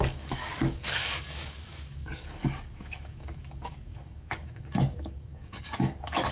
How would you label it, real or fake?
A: fake